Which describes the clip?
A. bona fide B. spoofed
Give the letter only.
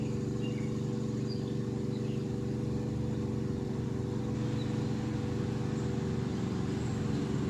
A